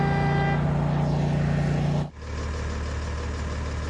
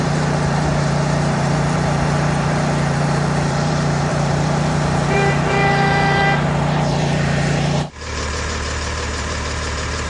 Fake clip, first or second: second